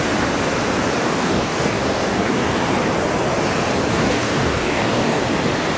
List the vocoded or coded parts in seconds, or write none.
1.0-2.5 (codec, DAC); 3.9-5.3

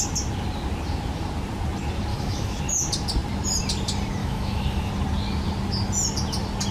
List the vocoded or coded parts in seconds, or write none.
2.1-2.6 (autoencoder, DAC-VAE); 4.2-4.9

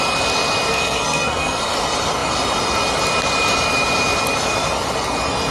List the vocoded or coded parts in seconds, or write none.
0.7-1.6 (codec, SNAC)

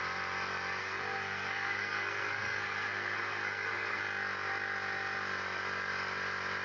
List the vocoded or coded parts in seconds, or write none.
0.8-4.0 (codec, SNAC)

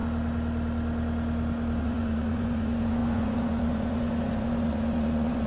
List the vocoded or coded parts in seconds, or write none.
1.8-5.5 (vocoder, Vocos)

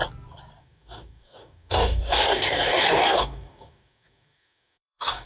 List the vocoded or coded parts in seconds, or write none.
0.6-5.3 (codec, DAC)